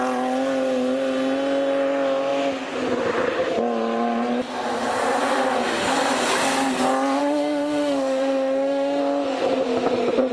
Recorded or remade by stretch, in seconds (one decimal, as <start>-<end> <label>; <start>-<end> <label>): 0.0-7.2 recorded; 7.2-9.0 remade; 9.0-10.3 recorded